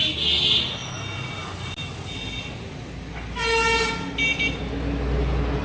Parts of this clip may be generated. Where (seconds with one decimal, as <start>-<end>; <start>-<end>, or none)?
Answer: none